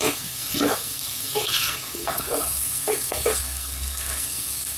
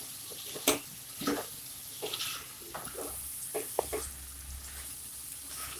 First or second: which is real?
second